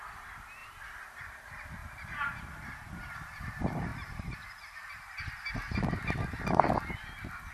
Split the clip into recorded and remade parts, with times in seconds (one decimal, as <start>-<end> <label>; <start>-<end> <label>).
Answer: 0.0-3.9 recorded; 3.9-6.7 remade; 6.7-7.5 recorded